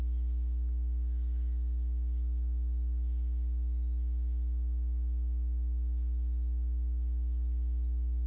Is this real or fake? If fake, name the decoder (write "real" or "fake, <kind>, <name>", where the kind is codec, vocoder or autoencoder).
real